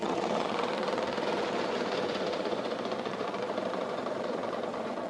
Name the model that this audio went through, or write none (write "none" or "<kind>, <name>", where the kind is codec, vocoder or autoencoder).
vocoder, Vocos